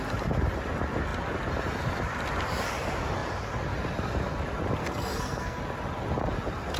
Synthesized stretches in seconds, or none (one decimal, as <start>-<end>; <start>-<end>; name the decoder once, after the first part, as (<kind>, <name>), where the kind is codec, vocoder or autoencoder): 4.8-5.6 (codec, SNAC)